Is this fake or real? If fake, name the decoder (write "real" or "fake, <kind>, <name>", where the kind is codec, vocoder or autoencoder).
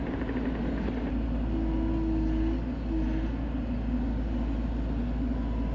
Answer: real